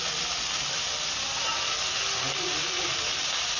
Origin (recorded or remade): recorded